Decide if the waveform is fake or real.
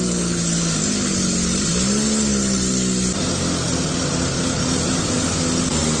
real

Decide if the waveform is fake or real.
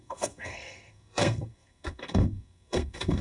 fake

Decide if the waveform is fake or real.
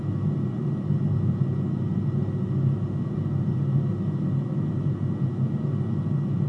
real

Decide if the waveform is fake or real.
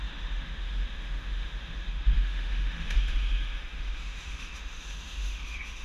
fake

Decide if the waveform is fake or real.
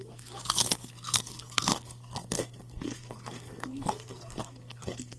fake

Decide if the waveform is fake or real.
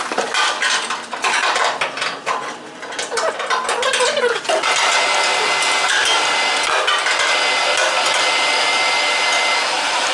real